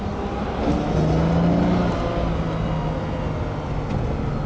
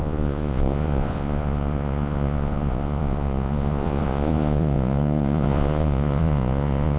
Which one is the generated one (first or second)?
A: second